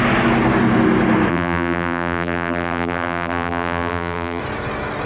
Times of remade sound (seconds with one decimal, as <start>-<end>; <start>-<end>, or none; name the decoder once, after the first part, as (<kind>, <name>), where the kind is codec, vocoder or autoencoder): 1.3-4.4 (vocoder, BigVGAN v2)